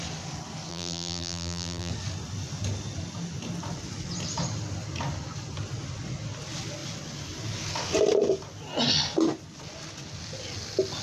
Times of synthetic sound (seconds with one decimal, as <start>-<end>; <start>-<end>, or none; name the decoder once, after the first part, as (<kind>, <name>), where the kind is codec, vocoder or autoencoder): 0.7-1.9 (vocoder, BigVGAN v2)